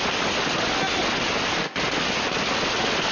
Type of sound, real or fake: real